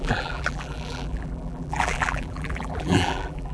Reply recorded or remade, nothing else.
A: remade